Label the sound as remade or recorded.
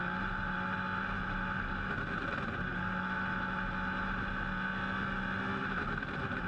recorded